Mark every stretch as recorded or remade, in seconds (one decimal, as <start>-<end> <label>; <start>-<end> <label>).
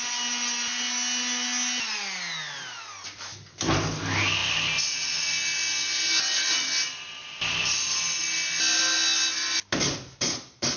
0.0-10.8 recorded